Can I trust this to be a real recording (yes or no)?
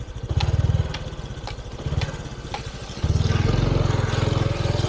yes